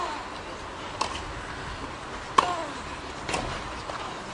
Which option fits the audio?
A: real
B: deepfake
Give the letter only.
A